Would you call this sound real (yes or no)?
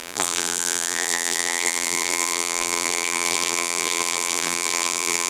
no